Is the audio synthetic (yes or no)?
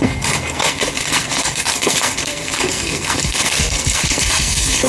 yes